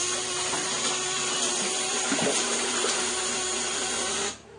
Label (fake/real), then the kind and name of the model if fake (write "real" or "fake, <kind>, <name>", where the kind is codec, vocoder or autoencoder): real